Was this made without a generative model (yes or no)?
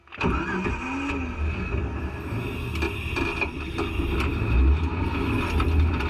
yes